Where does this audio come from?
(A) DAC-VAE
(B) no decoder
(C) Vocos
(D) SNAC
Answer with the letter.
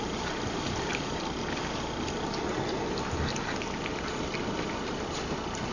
B